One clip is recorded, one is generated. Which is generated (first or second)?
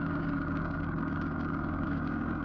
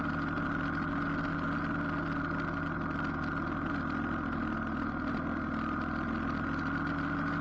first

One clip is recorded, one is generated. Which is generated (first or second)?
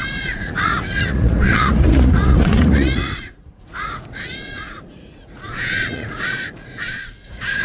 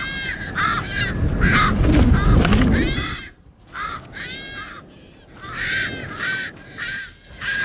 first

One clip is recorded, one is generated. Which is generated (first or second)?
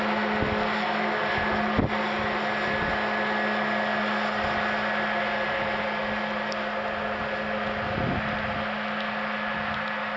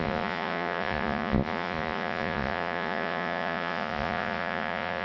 second